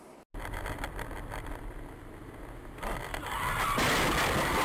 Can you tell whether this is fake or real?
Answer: real